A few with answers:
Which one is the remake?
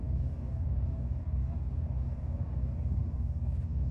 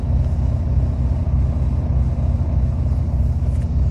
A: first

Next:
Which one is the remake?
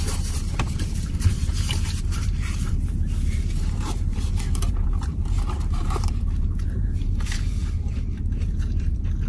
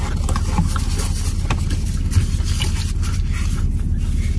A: first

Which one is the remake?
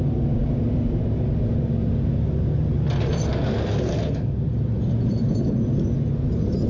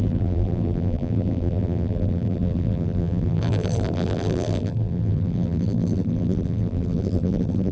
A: second